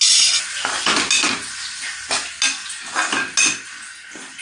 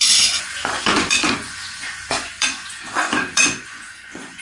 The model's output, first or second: second